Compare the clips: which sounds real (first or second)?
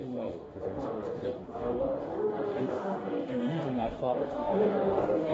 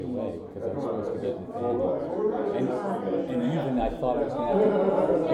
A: second